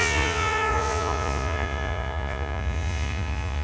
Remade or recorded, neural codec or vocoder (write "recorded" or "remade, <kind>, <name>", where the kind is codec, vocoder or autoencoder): remade, vocoder, Vocos